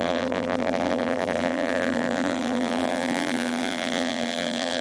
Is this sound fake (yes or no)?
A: yes